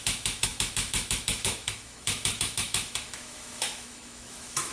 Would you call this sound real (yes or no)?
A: no